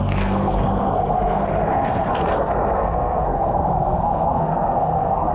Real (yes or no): no